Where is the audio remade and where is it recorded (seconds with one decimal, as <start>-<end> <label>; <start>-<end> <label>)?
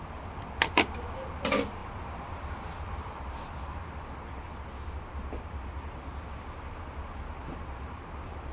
0.0-1.8 recorded; 1.8-3.8 remade; 3.8-8.5 recorded